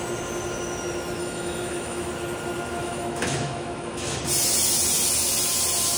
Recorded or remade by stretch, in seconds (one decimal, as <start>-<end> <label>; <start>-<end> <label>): 0.0-1.2 recorded; 1.2-2.1 remade; 2.1-2.8 recorded; 2.8-4.2 remade; 4.2-6.0 recorded

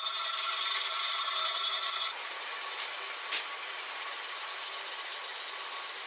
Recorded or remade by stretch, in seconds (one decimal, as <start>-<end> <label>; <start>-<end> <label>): 0.0-0.4 recorded; 0.4-3.0 remade; 3.0-6.1 recorded

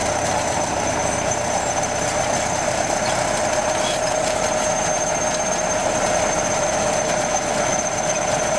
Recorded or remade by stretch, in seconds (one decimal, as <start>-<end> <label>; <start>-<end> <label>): 0.0-5.1 remade; 5.1-5.8 recorded; 5.8-6.9 remade; 6.9-7.7 recorded; 7.7-8.6 remade

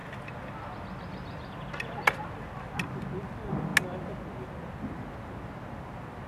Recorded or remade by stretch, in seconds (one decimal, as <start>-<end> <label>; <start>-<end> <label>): 0.0-6.3 recorded

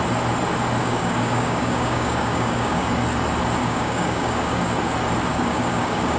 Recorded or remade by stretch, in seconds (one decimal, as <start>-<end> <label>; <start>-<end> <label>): 0.0-0.8 recorded; 0.8-2.9 remade; 2.9-3.6 recorded; 3.6-4.6 remade; 4.6-5.3 recorded; 5.3-6.2 remade

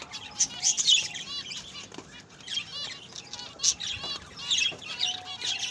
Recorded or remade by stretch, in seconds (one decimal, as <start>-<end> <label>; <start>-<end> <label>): 0.0-5.7 recorded